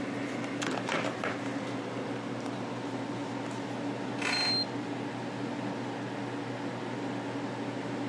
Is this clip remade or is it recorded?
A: recorded